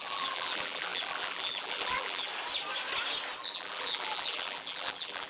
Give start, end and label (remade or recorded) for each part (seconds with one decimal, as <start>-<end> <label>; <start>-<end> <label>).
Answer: 0.0-2.3 remade; 2.3-3.4 recorded; 3.4-5.3 remade

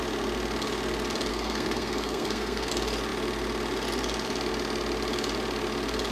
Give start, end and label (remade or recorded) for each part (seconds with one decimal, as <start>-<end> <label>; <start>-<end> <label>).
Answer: 0.0-1.3 recorded; 1.3-2.7 remade; 2.7-6.1 recorded

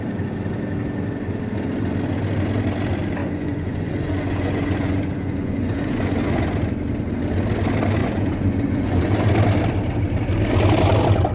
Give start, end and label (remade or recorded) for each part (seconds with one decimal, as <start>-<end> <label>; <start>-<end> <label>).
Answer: 0.0-3.2 recorded; 3.2-6.4 remade; 6.4-8.0 recorded; 8.0-9.3 remade; 9.3-11.3 recorded